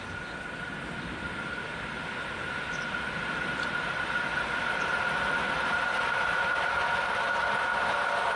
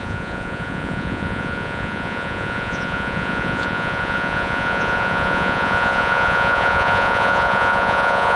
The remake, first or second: second